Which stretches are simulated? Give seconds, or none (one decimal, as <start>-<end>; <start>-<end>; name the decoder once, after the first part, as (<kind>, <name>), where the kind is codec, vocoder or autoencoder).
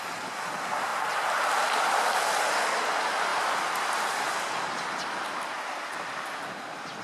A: none